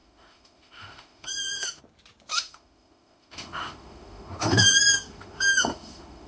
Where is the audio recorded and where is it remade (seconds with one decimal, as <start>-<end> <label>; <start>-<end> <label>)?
0.0-1.8 remade; 1.8-2.3 recorded; 2.3-6.3 remade